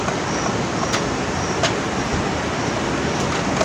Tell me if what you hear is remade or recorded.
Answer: recorded